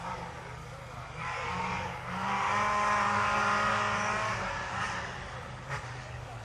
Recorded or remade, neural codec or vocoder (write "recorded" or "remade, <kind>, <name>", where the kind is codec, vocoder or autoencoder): remade, codec, DAC